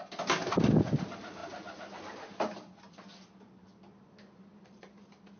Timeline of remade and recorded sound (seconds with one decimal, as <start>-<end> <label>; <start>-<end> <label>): 0.0-5.4 recorded